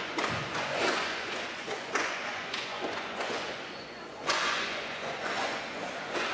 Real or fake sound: fake